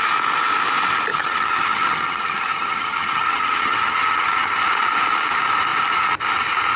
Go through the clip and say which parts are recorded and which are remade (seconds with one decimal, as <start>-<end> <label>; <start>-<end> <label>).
0.0-1.1 recorded; 1.1-4.6 remade; 4.6-6.8 recorded